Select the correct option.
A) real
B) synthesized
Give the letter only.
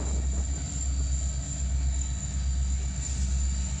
A